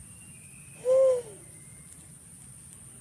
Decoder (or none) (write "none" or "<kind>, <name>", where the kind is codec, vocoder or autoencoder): none